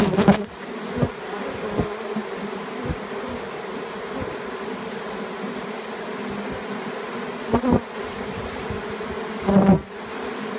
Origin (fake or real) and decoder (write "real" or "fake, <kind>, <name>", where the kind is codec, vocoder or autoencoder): real